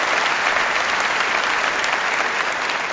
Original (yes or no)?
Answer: yes